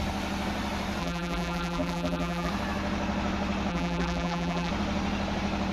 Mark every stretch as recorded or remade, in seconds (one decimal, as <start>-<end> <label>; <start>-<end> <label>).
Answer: 0.0-1.0 recorded; 1.0-2.5 remade; 2.5-3.7 recorded; 3.7-4.7 remade; 4.7-5.7 recorded